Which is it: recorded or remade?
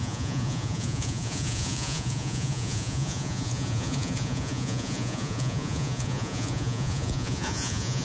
remade